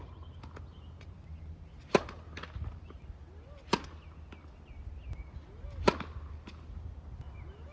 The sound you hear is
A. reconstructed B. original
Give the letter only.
B